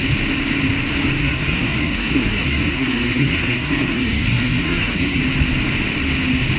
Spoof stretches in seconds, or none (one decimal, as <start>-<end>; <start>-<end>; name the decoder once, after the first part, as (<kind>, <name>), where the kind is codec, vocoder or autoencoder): 1.2-5.2 (codec, SNAC)